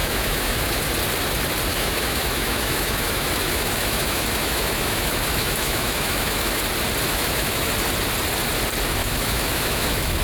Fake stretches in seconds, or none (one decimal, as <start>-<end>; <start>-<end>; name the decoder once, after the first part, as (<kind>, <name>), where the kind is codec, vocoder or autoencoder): 0.0-0.8 (autoencoder, DAC-VAE); 1.7-6.6; 7.1-7.7; 9.0-10.2

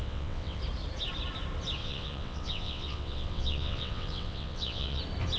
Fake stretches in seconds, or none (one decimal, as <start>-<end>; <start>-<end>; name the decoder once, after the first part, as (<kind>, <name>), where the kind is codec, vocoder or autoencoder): 0.0-0.6 (vocoder, WaveNeXt); 1.8-5.0

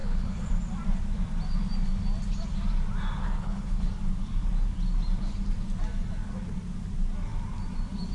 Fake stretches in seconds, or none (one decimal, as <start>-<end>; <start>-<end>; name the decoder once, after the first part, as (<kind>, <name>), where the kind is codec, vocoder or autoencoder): 0.0-0.5 (codec, HILCodec); 3.2-3.9

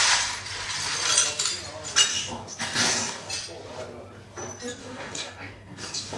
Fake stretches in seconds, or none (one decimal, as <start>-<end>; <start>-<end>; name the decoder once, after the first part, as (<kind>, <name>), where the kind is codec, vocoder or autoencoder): 2.1-3.3 (codec, DAC); 4.8-6.2

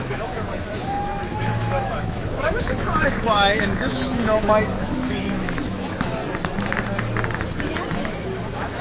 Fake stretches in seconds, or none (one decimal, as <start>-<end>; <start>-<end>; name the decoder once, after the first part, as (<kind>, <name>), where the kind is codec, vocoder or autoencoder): 0.0-6.2 (autoencoder, DAC-VAE); 8.0-8.8

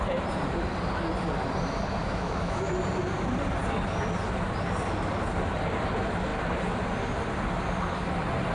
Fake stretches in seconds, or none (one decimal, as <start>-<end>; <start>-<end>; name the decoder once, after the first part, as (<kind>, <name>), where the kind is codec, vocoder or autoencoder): 2.0-2.7 (autoencoder, DAC-VAE)

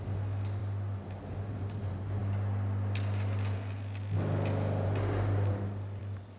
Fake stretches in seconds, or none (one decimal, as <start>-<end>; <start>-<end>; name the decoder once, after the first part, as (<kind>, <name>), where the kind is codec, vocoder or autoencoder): none

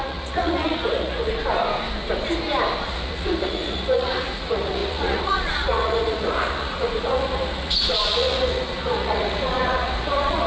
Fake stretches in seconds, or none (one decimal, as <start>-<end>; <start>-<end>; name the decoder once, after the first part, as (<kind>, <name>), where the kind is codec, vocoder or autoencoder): 0.0-1.3 (vocoder, Vocos); 2.8-10.5